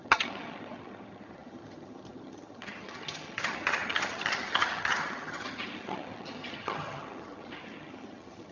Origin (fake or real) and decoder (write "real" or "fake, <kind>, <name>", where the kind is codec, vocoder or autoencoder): fake, vocoder, HiFi-GAN